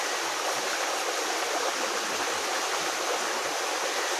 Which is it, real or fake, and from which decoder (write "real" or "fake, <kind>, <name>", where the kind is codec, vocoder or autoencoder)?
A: real